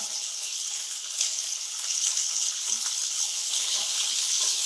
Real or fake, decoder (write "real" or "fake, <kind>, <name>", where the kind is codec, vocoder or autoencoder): fake, codec, HILCodec